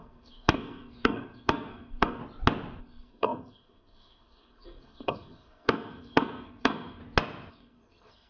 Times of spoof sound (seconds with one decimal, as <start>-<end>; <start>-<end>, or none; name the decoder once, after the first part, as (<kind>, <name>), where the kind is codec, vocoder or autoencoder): 0.0-2.2 (codec, SNAC); 2.8-7.0; 7.5-8.3